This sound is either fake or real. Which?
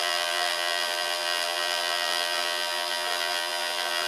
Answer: fake